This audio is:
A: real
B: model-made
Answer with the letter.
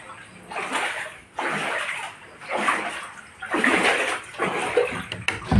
A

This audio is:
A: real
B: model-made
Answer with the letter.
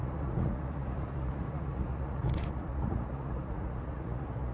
B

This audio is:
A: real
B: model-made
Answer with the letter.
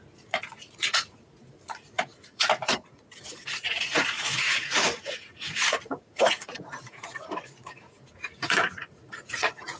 B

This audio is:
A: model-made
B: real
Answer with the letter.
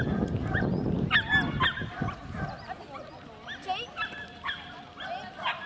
B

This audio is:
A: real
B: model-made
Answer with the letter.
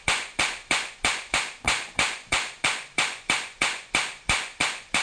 B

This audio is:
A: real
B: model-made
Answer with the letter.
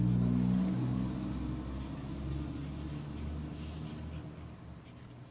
A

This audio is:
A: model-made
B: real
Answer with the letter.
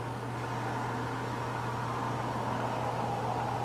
B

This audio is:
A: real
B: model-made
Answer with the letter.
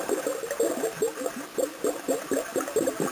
A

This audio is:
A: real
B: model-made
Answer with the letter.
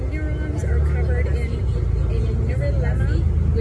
A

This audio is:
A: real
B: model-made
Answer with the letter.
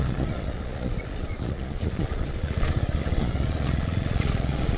B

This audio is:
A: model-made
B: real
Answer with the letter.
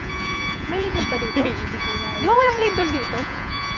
A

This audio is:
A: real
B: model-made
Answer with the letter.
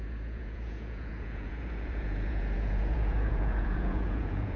B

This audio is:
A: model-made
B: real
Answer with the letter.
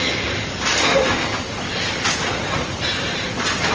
B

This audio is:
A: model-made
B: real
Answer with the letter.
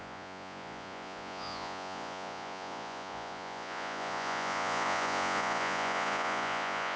A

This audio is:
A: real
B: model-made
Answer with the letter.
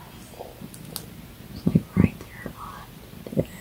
A